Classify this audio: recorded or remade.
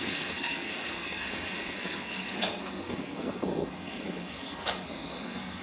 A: remade